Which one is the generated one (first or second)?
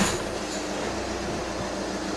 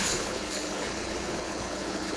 second